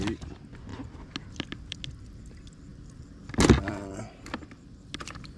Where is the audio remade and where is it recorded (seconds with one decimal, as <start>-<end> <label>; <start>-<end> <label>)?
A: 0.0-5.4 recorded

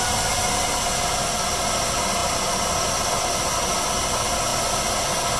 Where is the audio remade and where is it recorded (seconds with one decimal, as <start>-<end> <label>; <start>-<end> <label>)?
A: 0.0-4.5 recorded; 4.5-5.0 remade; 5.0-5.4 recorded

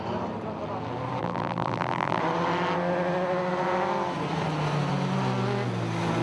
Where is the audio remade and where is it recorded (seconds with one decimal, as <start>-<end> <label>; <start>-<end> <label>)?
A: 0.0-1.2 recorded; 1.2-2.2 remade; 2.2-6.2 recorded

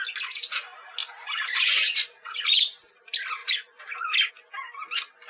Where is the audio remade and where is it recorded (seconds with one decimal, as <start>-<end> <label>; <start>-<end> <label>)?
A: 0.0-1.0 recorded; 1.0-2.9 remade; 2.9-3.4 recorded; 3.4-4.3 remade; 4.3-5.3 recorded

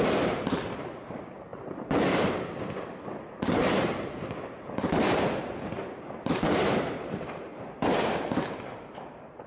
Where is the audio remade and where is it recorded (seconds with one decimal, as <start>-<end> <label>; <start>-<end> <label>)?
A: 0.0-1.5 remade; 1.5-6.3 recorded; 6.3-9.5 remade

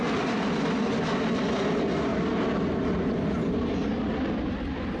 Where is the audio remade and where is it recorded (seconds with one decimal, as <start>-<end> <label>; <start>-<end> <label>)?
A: 0.0-5.0 recorded

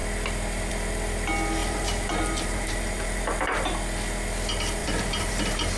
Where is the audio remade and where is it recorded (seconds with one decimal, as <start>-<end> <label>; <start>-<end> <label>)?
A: 0.0-1.6 recorded; 1.6-3.2 remade; 3.2-4.8 recorded; 4.8-5.8 remade

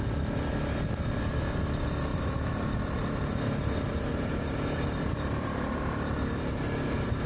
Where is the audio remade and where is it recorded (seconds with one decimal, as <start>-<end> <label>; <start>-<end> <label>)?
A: 0.0-2.1 recorded; 2.1-2.8 remade; 2.8-3.3 recorded; 3.3-7.3 remade